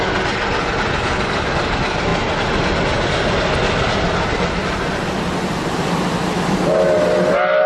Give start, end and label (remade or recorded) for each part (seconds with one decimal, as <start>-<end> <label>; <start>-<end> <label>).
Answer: 0.0-7.7 recorded

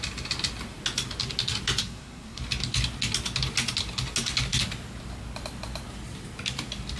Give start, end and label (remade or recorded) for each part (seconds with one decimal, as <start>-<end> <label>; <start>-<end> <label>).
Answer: 0.0-1.8 recorded; 1.8-2.4 remade; 2.4-7.0 recorded

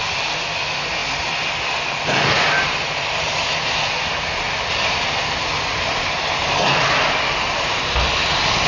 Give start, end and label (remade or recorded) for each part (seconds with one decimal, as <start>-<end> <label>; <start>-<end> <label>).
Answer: 0.0-8.7 recorded

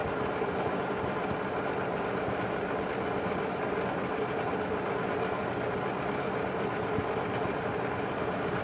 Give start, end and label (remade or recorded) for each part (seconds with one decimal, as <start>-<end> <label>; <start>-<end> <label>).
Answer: 0.0-8.6 recorded

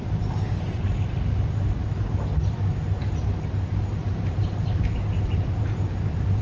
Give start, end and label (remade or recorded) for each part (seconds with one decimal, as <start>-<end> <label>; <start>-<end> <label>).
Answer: 0.0-6.4 recorded

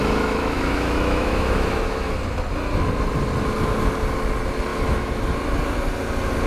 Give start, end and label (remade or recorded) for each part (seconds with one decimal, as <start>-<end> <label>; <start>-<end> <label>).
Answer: 0.0-2.1 remade; 2.1-4.7 recorded; 4.7-5.2 remade; 5.2-6.5 recorded